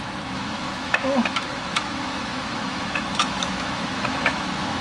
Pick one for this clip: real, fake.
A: fake